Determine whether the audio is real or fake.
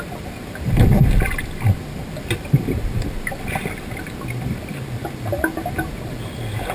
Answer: real